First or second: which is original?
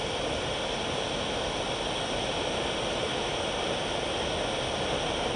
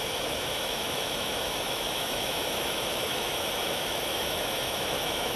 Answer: first